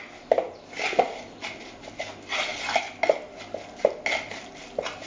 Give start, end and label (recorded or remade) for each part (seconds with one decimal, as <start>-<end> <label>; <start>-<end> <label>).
0.0-5.1 recorded